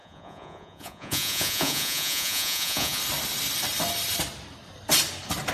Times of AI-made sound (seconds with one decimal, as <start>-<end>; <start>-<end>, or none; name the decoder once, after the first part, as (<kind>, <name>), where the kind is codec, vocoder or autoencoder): 0.0-3.0 (vocoder, Vocos)